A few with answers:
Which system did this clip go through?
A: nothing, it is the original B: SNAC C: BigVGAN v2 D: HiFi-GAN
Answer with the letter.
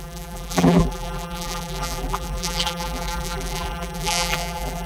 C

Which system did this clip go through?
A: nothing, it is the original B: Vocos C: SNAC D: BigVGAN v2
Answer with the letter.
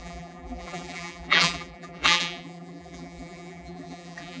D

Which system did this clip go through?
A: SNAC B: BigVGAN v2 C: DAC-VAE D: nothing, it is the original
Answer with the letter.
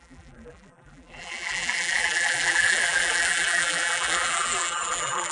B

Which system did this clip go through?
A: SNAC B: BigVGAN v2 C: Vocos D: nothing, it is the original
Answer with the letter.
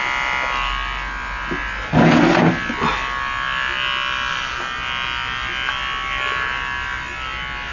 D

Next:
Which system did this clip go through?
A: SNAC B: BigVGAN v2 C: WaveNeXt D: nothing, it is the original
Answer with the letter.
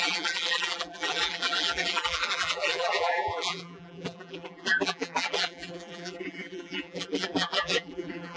B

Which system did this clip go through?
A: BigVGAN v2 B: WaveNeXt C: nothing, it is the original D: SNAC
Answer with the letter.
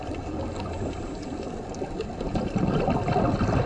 A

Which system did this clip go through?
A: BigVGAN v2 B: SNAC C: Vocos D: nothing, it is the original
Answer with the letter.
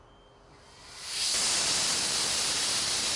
D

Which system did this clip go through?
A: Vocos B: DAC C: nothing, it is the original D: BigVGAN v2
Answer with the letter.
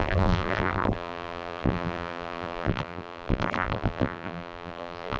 D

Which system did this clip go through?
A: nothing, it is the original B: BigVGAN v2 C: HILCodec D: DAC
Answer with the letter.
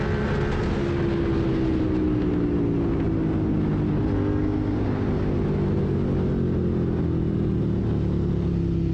A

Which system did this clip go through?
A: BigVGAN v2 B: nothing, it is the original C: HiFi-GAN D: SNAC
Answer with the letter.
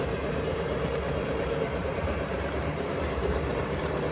A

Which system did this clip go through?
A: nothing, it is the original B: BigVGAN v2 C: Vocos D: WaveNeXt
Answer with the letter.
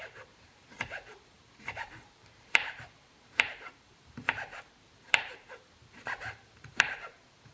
B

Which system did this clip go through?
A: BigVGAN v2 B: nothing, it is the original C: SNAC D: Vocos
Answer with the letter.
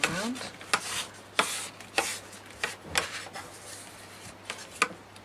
B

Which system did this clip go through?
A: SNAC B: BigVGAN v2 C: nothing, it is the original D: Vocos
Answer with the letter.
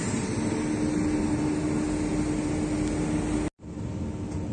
C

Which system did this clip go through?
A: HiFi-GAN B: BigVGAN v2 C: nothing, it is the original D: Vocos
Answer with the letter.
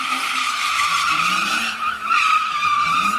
B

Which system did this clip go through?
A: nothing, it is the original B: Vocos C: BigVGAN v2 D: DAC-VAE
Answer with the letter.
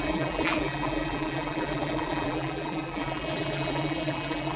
C